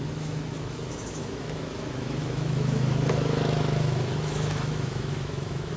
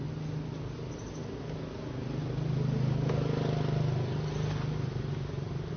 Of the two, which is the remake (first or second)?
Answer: first